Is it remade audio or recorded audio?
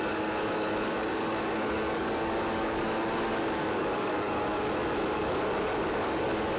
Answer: remade